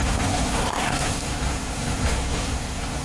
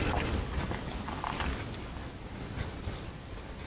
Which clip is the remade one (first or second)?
first